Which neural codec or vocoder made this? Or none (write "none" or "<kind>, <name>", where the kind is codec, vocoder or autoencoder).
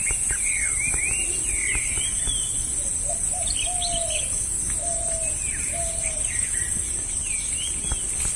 none